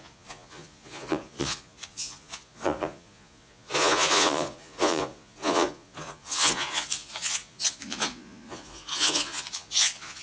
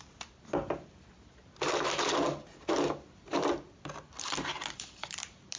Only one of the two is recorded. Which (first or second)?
second